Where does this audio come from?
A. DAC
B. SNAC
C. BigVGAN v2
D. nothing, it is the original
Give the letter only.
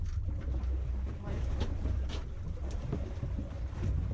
D